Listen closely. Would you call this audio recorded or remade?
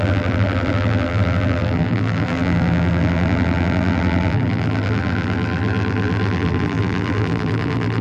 remade